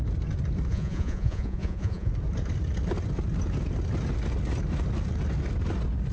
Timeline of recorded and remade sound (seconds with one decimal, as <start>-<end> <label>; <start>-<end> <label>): 0.0-0.7 recorded; 0.7-2.1 remade; 2.1-6.1 recorded